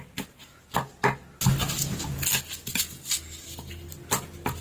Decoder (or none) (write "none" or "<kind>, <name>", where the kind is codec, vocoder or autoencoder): none